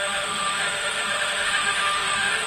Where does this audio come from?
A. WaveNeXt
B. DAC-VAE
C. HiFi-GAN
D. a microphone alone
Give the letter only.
B